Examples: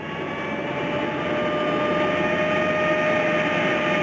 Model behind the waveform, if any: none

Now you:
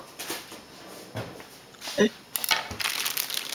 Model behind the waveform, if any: none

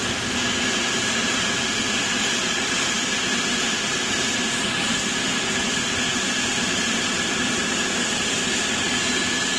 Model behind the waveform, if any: none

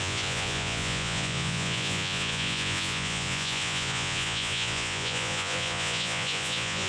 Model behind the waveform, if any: vocoder, Vocos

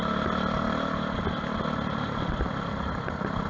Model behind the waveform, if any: none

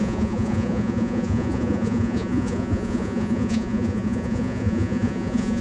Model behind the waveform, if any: vocoder, Vocos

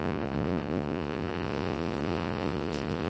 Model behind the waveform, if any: vocoder, Vocos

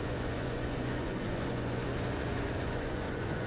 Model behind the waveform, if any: vocoder, Vocos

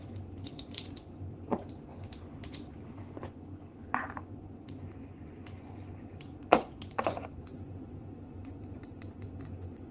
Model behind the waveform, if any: vocoder, Vocos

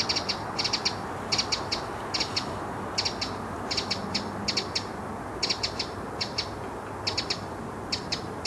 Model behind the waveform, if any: none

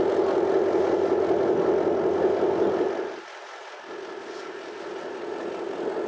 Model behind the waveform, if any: none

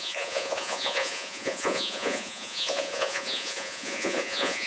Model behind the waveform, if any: vocoder, Vocos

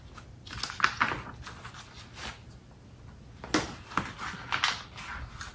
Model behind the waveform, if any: none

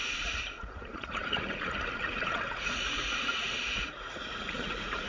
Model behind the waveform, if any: vocoder, Vocos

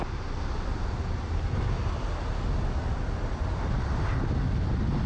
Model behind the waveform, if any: none